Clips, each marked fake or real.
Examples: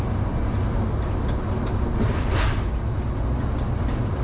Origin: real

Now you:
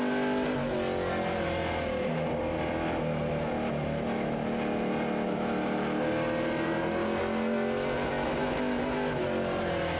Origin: real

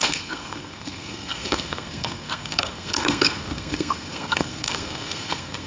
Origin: fake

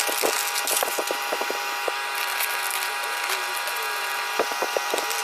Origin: real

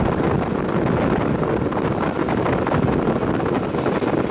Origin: fake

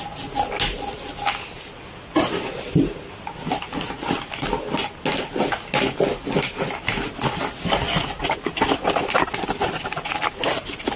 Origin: real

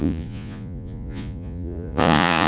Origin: fake